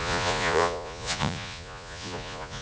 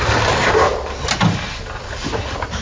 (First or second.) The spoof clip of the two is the first